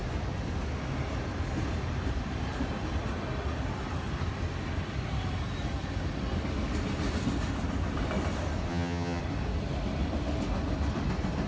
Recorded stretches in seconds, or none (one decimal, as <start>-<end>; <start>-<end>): 0.0-8.7; 9.2-11.5